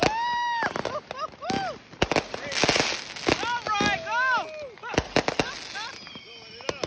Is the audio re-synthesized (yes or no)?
no